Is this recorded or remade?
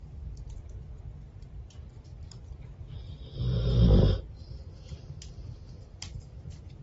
recorded